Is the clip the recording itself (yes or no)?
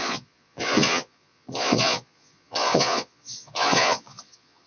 no